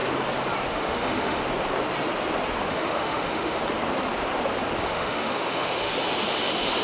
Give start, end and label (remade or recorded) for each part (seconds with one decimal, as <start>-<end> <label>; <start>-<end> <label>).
0.0-0.7 recorded; 0.7-1.4 remade; 1.4-2.7 recorded; 2.7-3.6 remade; 3.6-4.8 recorded; 4.8-5.9 remade; 5.9-6.8 recorded